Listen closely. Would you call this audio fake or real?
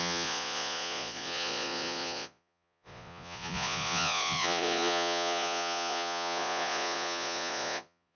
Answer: fake